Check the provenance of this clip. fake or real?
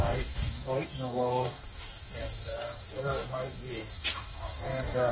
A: fake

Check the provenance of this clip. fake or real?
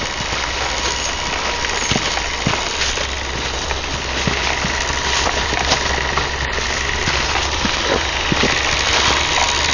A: real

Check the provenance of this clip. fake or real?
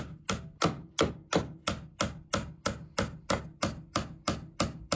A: real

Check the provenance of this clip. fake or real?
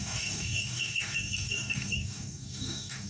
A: fake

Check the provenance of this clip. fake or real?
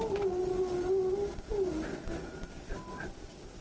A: real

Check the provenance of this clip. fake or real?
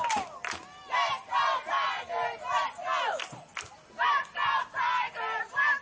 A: real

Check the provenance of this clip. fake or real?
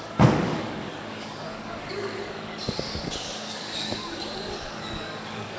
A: fake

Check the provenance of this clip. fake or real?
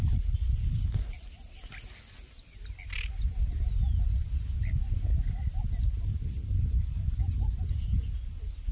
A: real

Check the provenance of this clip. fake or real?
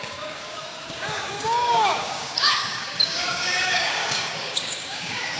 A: fake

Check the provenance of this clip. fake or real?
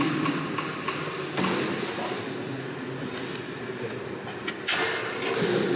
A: real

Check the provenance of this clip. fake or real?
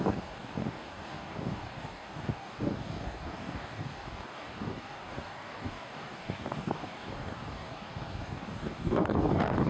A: fake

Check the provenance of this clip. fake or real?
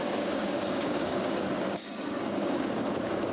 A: fake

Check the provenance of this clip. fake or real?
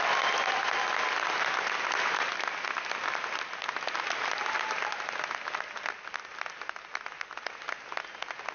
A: real